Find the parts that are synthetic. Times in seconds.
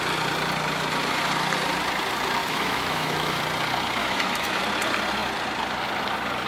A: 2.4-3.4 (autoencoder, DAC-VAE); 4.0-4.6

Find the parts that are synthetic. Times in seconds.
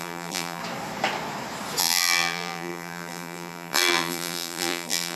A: 0.0-0.6 (vocoder, BigVGAN v2); 1.8-5.2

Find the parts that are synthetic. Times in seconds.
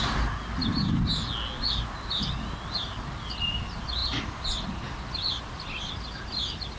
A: none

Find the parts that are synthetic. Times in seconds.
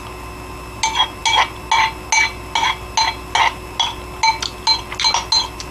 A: none